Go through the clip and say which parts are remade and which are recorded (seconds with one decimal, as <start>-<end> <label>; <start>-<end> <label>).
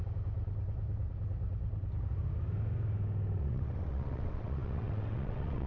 0.0-3.4 recorded; 3.4-5.7 remade